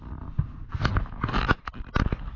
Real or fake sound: real